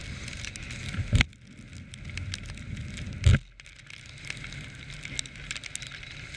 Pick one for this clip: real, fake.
real